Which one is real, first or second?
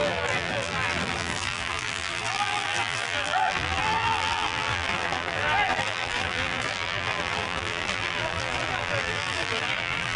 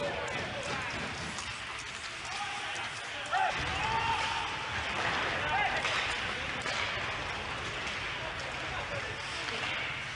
second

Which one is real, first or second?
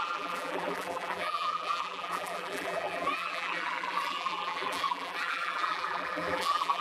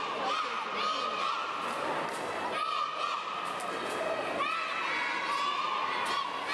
second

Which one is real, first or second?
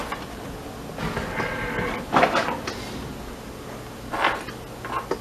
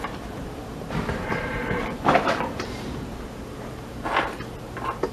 first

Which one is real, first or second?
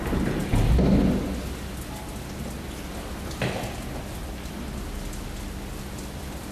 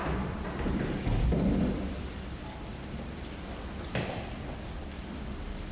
first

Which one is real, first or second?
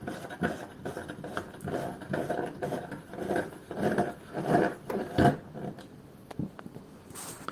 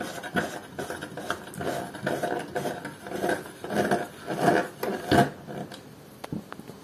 second